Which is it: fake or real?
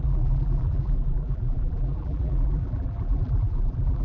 fake